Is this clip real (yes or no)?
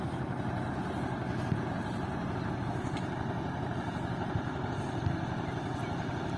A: yes